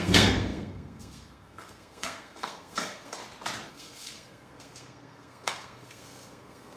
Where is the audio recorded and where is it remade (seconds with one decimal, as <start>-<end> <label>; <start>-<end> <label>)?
0.0-3.2 remade; 3.2-3.7 recorded; 3.7-6.8 remade